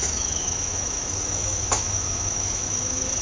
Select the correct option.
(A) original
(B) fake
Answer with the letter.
B